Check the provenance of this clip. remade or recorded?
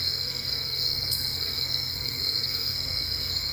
remade